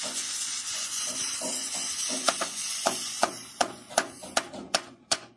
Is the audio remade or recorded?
remade